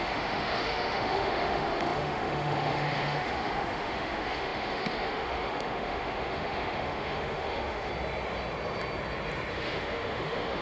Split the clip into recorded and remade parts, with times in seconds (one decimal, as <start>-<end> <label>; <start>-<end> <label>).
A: 0.0-7.9 remade; 7.9-9.5 recorded; 9.5-10.6 remade